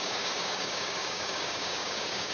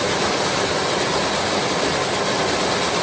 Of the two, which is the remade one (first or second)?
first